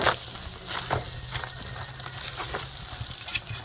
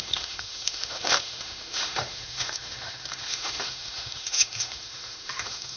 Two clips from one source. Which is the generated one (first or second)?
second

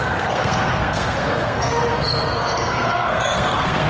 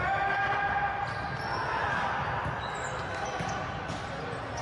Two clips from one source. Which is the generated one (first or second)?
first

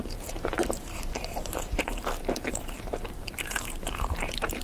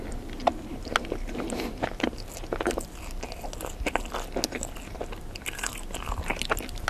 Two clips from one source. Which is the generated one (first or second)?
first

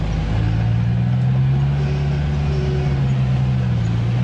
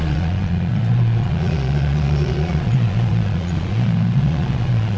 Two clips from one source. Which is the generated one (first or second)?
second